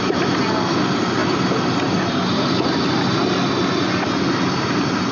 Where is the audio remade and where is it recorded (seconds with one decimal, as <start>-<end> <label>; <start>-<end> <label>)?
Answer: 0.0-5.1 recorded